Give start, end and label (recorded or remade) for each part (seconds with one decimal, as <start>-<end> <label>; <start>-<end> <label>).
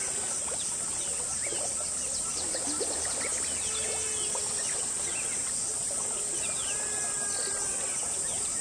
0.0-3.3 remade; 3.3-4.6 recorded; 4.6-8.6 remade